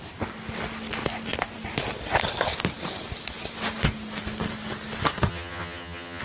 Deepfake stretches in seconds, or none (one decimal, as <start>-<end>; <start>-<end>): 5.3-6.2